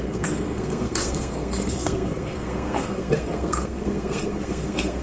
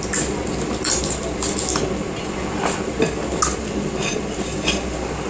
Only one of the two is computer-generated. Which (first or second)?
first